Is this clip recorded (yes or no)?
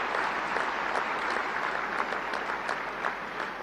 yes